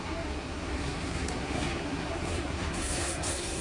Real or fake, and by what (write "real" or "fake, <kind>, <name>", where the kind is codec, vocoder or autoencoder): fake, codec, SNAC